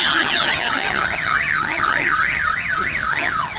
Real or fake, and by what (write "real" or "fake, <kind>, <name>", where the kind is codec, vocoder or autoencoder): fake, vocoder, HiFi-GAN